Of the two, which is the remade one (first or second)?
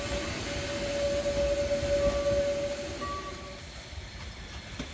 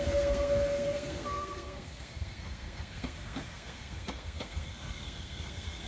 second